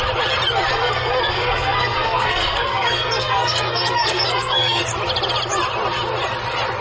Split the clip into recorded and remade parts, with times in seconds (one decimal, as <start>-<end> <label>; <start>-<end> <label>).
0.0-0.7 recorded; 0.7-4.8 remade; 4.8-6.8 recorded